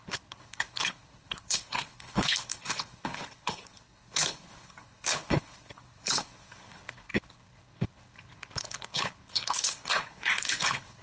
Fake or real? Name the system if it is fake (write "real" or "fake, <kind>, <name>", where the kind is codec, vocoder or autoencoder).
fake, codec, HILCodec